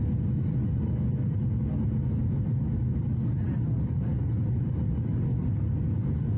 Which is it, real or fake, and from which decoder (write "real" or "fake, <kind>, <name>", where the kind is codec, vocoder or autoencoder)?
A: real